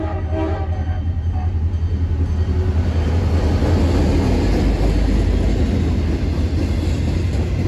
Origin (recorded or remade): recorded